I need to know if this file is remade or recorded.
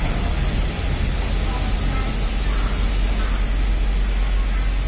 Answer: recorded